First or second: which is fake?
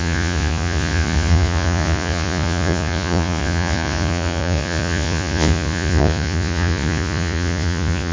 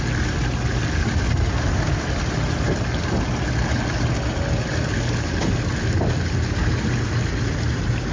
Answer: first